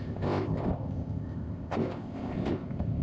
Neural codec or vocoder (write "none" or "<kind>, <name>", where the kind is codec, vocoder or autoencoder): codec, ZipCodec